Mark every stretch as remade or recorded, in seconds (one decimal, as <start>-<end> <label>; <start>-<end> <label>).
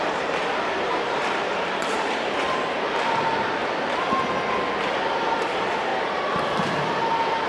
0.0-3.6 remade; 3.6-4.9 recorded; 4.9-7.5 remade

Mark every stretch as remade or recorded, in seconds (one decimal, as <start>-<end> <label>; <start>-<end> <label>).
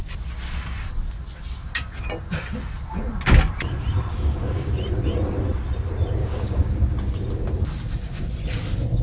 0.0-4.1 recorded; 4.1-4.7 remade; 4.7-6.2 recorded; 6.2-6.7 remade; 6.7-9.0 recorded